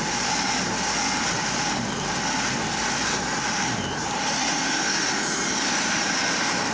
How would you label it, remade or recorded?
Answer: recorded